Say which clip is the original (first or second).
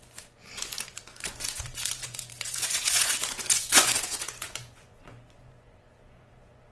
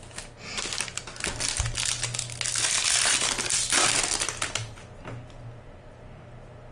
second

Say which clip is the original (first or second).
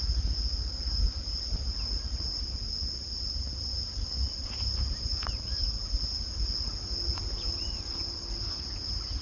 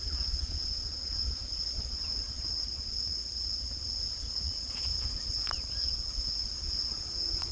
first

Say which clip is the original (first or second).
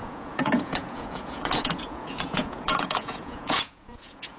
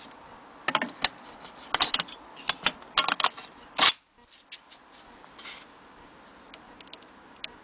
second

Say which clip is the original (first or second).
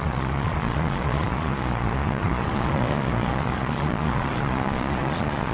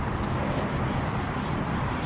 second